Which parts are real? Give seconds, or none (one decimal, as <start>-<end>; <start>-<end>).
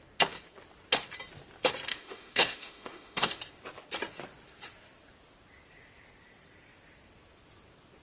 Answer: 0.0-1.9; 3.4-8.0